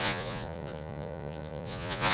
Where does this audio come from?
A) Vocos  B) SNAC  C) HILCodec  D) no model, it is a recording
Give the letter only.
A